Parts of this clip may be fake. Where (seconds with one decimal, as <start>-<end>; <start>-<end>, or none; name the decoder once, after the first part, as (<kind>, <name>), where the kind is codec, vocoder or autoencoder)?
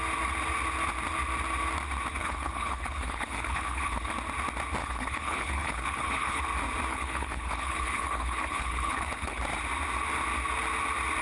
2.2-4.1 (codec, HILCodec); 4.8-6.4; 6.9-9.4